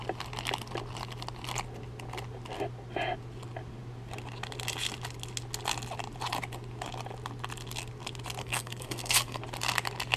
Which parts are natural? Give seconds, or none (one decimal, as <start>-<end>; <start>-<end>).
0.0-8.4; 9.4-10.2

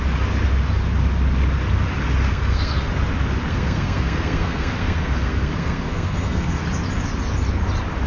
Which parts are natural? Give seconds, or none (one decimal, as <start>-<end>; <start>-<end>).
0.0-2.3; 2.9-3.5; 6.6-8.1

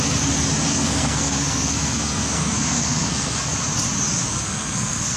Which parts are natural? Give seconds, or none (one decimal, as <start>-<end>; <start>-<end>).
0.0-0.7; 3.5-4.3

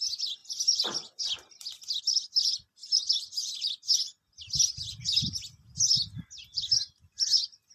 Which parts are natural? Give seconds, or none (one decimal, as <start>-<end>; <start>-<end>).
0.0-7.7

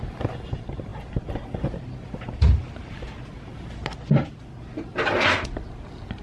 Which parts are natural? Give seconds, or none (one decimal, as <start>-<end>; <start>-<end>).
0.0-6.2

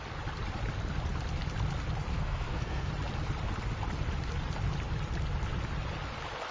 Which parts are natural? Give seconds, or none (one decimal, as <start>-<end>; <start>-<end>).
0.0-2.1; 2.9-6.5